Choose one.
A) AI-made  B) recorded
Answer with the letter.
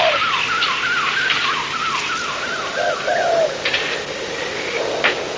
B